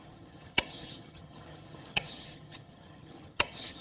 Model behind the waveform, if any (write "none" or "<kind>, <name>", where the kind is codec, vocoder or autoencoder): vocoder, HiFi-GAN